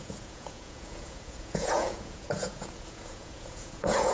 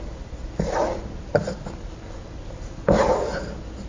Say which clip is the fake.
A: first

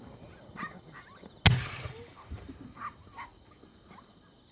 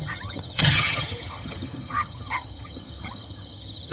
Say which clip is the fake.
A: second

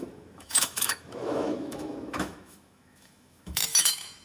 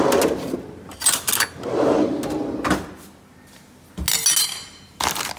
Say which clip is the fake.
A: first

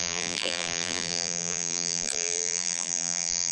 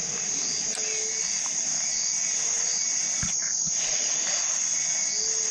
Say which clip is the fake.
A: first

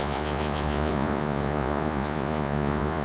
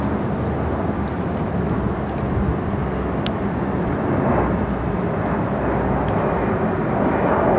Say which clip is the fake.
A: first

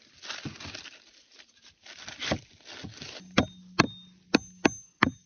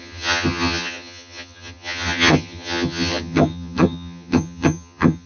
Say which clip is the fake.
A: second